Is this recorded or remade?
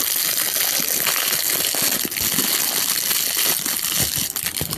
recorded